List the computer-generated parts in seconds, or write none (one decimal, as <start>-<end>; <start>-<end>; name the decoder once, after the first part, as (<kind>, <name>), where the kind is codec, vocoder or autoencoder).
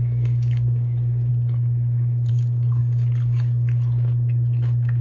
0.0-1.3 (codec, DAC); 2.3-2.8